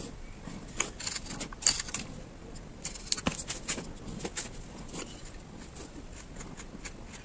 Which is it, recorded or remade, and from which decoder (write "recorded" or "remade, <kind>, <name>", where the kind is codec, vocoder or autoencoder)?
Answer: recorded